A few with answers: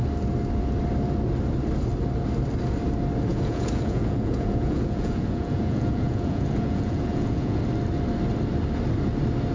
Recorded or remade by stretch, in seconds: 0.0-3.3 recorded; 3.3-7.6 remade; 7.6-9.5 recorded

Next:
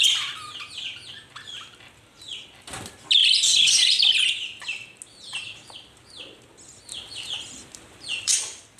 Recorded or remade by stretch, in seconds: 0.0-3.2 recorded; 3.2-4.6 remade; 4.6-6.9 recorded; 6.9-8.3 remade; 8.3-8.8 recorded